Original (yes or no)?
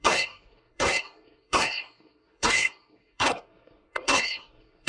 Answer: no